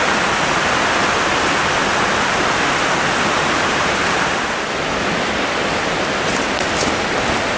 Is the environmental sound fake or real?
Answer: real